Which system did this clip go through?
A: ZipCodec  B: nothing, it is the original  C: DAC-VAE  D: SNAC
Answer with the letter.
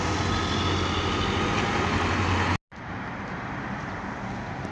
B